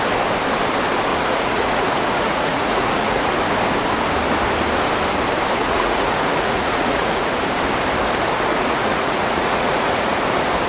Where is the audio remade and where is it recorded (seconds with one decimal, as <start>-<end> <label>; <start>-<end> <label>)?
0.0-1.1 recorded; 1.1-3.3 remade; 3.3-5.6 recorded; 5.6-7.3 remade; 7.3-8.5 recorded; 8.5-10.2 remade; 10.2-10.7 recorded